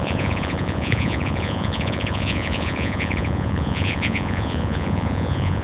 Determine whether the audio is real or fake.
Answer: fake